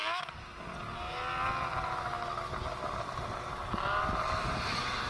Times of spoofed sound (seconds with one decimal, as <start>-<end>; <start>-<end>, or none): 3.1-5.1